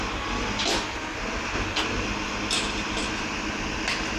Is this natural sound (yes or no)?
yes